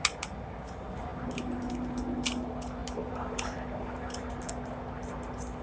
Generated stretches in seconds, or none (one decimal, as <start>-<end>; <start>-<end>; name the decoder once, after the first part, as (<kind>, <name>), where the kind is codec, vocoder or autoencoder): 1.1-1.7 (vocoder, BigVGAN v2); 2.8-4.5